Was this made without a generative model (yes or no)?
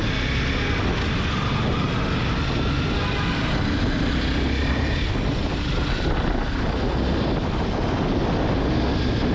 yes